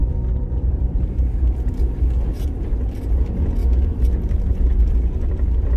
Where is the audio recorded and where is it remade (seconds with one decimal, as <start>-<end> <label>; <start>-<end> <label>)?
0.0-2.6 remade; 2.6-3.6 recorded; 3.6-4.9 remade; 4.9-5.8 recorded